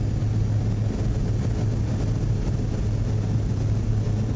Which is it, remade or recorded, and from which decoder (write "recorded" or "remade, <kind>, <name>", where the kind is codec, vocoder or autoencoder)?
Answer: recorded